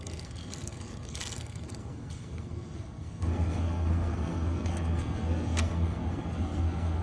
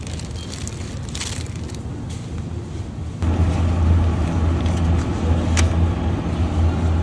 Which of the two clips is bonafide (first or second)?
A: second